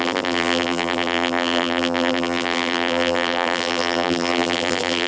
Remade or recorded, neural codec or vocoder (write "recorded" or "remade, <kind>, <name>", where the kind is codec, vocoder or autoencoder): remade, vocoder, BigVGAN v2